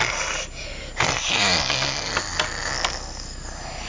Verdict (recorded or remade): recorded